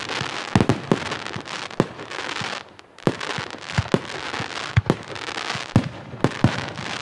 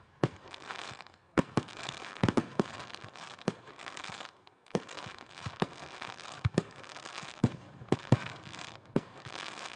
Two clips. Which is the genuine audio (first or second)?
first